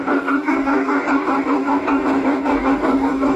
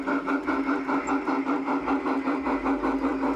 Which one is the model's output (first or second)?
first